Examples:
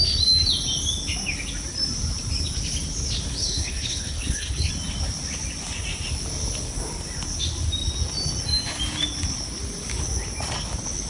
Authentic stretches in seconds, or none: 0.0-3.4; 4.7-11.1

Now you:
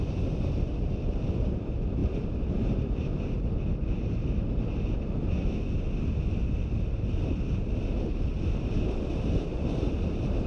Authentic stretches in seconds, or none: 0.0-10.5

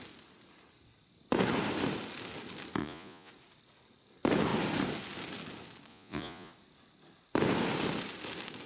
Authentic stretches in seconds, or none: 0.0-2.8; 3.3-5.9; 6.5-8.7

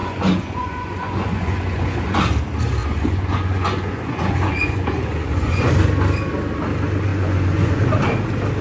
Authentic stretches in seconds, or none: 2.2-2.8; 5.7-7.1; 7.8-8.6

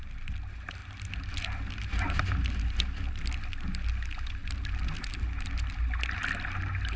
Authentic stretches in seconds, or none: 0.0-7.0

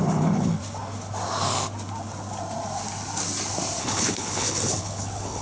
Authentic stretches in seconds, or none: 0.6-3.8

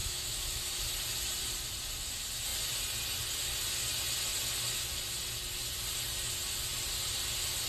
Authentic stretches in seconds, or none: 0.8-7.7